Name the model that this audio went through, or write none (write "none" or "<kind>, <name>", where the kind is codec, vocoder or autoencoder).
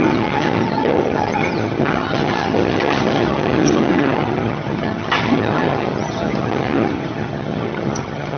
vocoder, HiFi-GAN